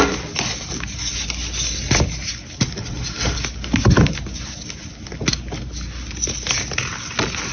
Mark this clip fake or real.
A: real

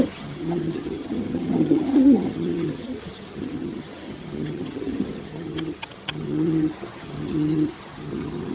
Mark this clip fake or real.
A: fake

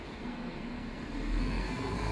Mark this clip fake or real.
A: fake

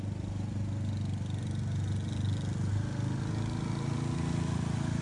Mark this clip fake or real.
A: real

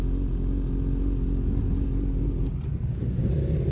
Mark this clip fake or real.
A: real